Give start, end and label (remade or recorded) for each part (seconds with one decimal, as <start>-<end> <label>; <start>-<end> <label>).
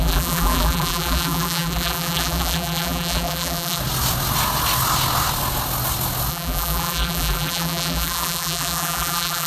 0.0-3.8 remade; 3.8-6.3 recorded; 6.3-9.5 remade